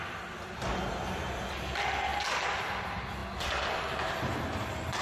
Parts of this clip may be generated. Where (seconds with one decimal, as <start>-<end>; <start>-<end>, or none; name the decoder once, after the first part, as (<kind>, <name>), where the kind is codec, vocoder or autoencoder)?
none